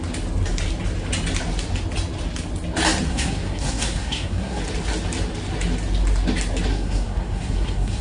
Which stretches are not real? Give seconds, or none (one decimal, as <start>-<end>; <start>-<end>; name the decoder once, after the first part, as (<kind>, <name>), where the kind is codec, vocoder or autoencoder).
3.1-4.6 (codec, SNAC); 6.7-8.0